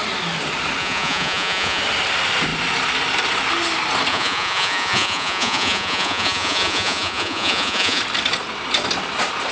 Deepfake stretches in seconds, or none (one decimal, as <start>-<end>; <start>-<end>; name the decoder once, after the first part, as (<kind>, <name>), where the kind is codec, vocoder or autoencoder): 0.8-1.8 (vocoder, Vocos); 4.1-8.0